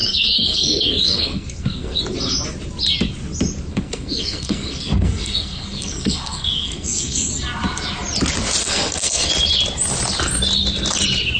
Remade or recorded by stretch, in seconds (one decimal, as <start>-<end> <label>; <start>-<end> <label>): 0.0-2.0 remade; 2.0-3.7 recorded; 3.7-7.3 remade; 7.3-8.6 recorded; 8.6-9.3 remade; 9.3-11.4 recorded